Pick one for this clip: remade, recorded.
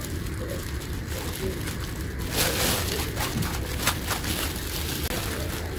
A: recorded